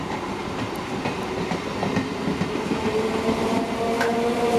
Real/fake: real